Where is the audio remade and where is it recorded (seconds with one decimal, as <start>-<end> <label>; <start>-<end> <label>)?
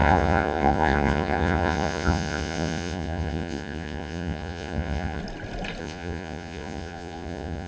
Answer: 0.0-5.2 remade; 5.2-5.8 recorded; 5.8-7.7 remade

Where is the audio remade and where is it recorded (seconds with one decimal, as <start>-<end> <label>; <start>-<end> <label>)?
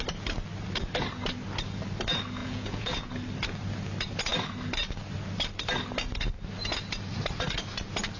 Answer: 0.0-2.4 recorded; 2.4-3.1 remade; 3.1-8.2 recorded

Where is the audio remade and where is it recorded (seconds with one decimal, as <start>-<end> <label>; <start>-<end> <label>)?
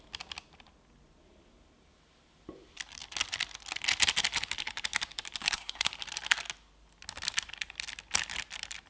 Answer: 0.0-5.4 recorded; 5.4-5.9 remade; 5.9-8.9 recorded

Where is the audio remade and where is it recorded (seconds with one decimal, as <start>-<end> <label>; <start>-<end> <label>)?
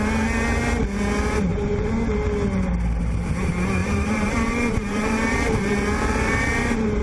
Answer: 0.0-3.8 recorded; 3.8-7.0 remade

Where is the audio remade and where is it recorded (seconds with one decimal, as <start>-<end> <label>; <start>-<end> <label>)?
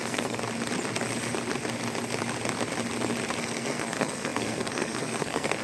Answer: 0.0-0.4 remade; 0.4-3.4 recorded; 3.4-5.6 remade